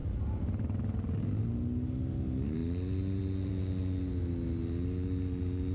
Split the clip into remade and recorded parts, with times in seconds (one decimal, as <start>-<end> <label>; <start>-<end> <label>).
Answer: 0.0-5.7 recorded